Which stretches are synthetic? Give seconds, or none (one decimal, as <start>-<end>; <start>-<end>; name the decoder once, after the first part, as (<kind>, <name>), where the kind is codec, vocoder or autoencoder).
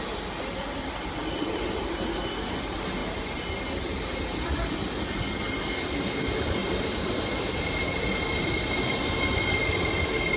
1.2-1.8 (vocoder, BigVGAN v2); 3.0-5.0; 6.6-10.4